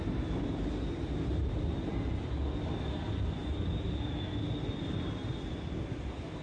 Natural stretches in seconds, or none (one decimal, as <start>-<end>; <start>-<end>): 0.0-1.4; 2.3-6.4